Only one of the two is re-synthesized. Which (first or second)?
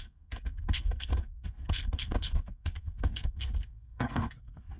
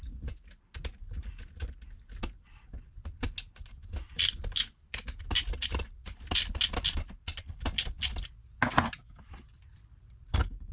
first